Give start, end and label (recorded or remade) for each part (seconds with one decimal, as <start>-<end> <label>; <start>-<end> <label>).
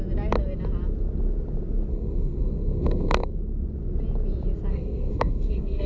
0.0-1.9 recorded; 1.9-3.3 remade; 3.3-4.7 recorded; 4.7-5.9 remade